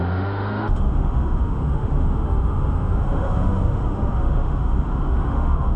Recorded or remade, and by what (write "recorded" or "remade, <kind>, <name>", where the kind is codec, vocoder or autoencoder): remade, autoencoder, DAC-VAE